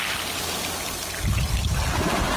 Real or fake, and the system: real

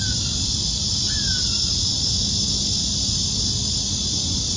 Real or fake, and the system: real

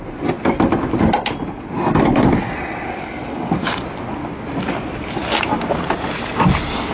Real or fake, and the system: real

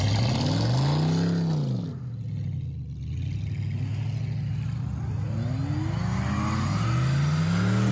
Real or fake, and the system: real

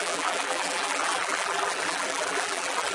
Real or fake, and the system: fake, vocoder, BigVGAN v2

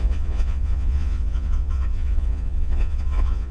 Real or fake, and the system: fake, vocoder, Vocos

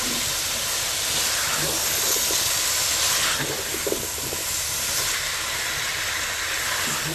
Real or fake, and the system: real